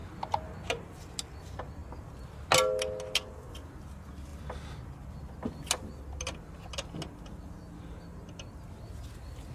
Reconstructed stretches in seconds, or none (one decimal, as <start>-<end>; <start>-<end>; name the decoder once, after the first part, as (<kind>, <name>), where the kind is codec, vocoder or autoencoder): none